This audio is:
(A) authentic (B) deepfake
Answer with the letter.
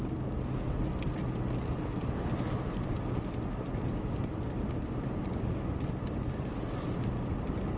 A